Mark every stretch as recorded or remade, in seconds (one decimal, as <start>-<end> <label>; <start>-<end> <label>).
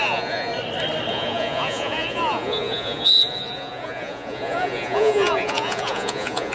0.0-0.5 remade; 0.5-1.1 recorded; 1.1-6.5 remade